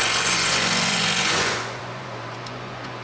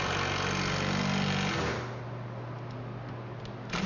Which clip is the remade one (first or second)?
first